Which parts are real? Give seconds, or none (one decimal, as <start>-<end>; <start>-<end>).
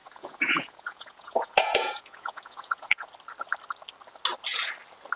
3.1-5.2